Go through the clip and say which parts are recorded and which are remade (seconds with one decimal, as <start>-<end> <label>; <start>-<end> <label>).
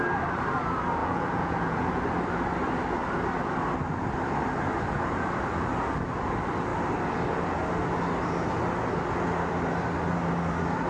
0.0-1.0 recorded; 1.0-2.0 remade; 2.0-10.9 recorded